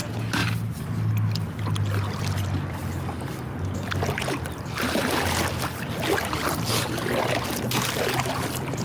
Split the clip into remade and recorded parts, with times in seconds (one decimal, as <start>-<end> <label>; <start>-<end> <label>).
0.0-8.8 recorded

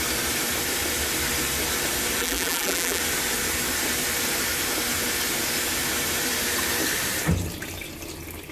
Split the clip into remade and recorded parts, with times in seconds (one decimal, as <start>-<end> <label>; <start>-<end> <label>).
0.0-2.2 recorded; 2.2-3.0 remade; 3.0-8.5 recorded